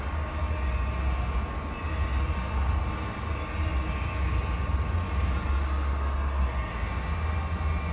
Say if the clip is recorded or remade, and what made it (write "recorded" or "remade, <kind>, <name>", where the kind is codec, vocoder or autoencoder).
recorded